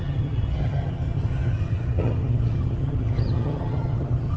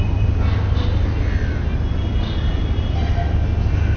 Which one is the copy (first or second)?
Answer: first